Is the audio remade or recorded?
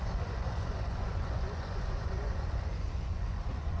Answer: remade